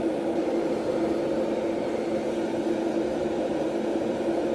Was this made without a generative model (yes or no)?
no